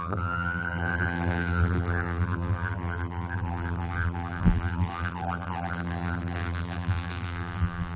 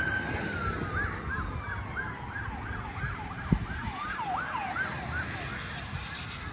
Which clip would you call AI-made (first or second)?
first